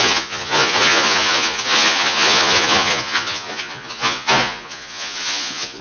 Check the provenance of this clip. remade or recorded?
remade